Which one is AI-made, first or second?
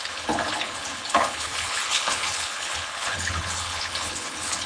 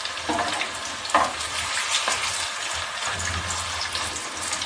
first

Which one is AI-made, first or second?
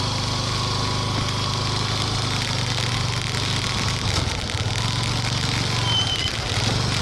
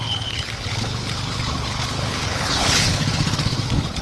second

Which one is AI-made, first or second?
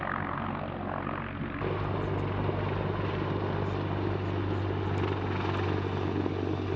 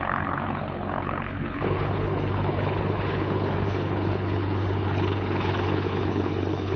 second